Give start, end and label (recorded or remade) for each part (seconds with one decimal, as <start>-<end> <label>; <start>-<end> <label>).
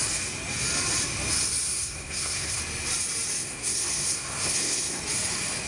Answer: 0.0-1.7 recorded; 1.7-2.6 remade; 2.6-3.4 recorded; 3.4-5.0 remade; 5.0-5.7 recorded